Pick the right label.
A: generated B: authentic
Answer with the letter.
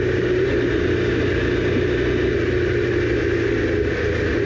B